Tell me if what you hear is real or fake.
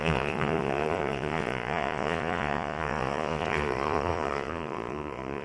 fake